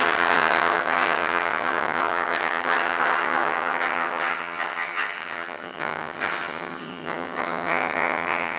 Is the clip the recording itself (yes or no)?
no